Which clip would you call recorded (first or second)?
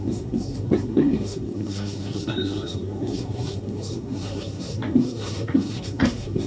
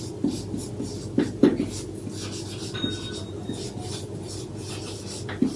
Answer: second